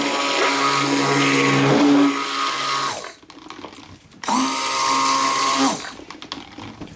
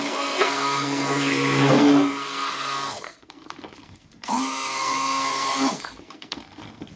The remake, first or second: second